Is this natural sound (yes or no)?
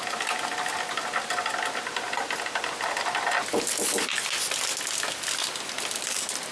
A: yes